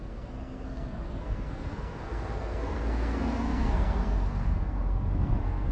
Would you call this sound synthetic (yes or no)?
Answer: yes